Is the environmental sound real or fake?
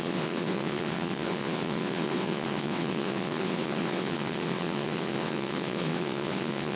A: fake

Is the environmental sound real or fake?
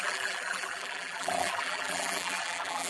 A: fake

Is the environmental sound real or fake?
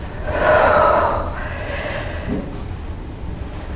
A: fake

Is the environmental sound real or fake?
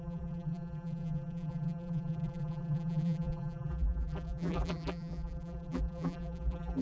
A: fake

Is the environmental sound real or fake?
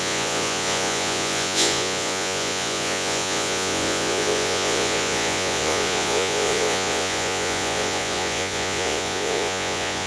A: fake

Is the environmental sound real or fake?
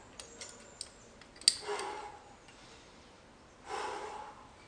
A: real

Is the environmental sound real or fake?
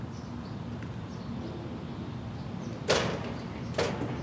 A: real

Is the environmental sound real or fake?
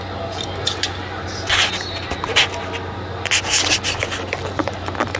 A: real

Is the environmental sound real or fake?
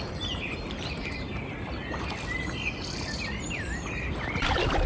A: fake